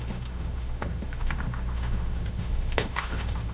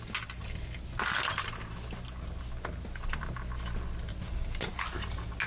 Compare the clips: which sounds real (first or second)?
second